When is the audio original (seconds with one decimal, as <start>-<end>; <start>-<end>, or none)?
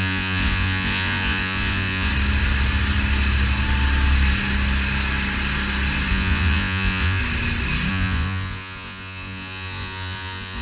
2.1-6.1; 7.2-7.9